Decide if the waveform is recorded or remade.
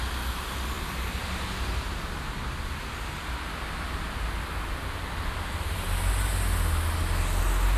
recorded